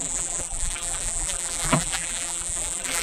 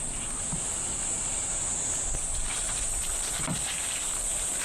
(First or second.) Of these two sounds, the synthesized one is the first